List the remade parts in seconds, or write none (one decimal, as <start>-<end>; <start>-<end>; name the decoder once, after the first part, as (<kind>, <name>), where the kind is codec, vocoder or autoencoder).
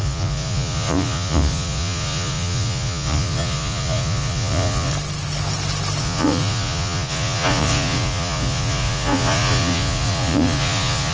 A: 0.0-4.9 (vocoder, Vocos); 6.0-11.1